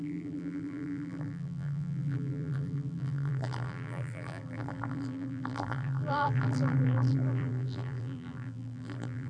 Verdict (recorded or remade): remade